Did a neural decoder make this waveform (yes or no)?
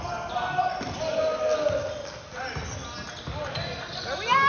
no